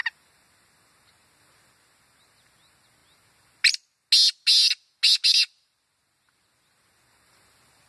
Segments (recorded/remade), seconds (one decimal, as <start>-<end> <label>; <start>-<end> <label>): 0.0-7.9 recorded